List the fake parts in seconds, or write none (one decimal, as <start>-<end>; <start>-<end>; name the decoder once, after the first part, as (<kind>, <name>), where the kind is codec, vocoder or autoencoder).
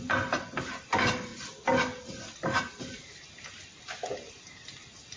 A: none